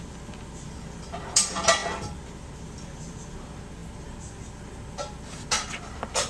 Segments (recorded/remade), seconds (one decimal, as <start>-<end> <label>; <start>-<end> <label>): 0.0-6.3 recorded